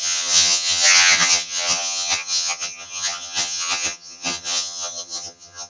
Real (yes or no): no